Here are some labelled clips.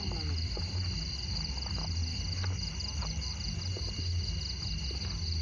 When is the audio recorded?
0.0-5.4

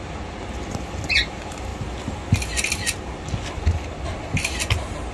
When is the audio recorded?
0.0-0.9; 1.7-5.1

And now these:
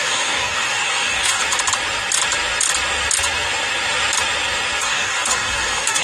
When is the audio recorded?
1.4-4.8

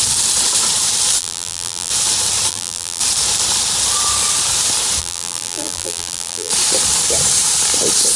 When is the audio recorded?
0.0-1.2; 1.9-2.5; 3.0-5.0; 6.5-8.2

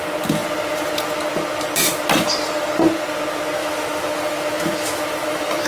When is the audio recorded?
0.0-3.6

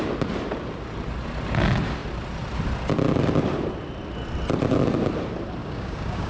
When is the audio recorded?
0.0-5.6